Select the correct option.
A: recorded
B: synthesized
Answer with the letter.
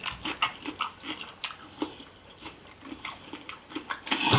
A